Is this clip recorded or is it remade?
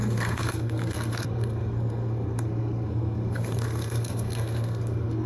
remade